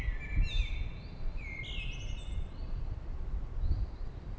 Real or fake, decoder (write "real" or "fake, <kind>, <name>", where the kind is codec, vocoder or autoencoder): real